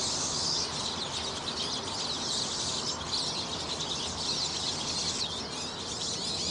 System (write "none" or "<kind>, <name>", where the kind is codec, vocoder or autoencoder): none